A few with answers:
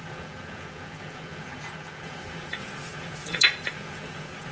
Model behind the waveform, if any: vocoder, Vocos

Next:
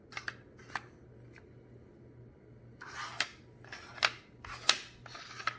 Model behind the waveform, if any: none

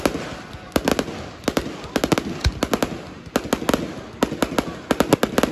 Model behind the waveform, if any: none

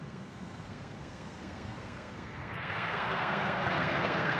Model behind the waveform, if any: codec, SNAC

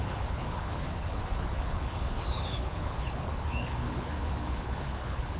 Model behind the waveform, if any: codec, HILCodec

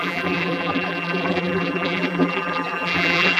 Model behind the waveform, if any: vocoder, BigVGAN v2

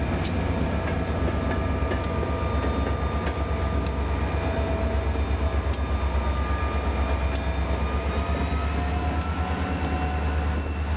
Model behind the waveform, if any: none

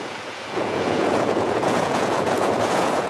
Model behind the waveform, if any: vocoder, Vocos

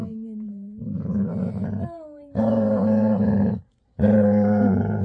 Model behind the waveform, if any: vocoder, BigVGAN v2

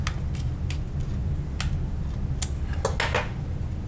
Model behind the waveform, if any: none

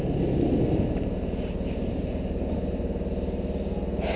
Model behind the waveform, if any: none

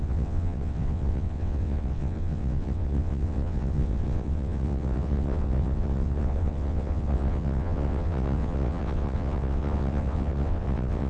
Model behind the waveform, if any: vocoder, WaveNeXt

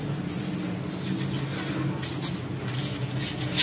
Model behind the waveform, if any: none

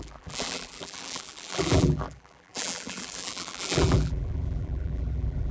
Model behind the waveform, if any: vocoder, BigVGAN v2